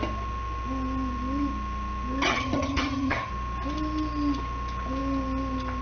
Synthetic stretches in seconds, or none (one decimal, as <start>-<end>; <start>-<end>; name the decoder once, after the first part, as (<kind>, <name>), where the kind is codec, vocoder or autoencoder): 2.3-3.3 (vocoder, HiFi-GAN)